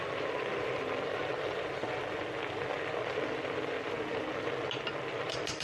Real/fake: real